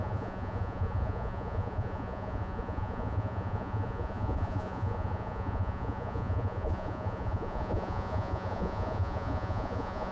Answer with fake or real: fake